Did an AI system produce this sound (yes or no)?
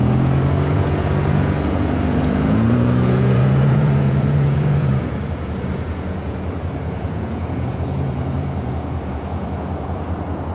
yes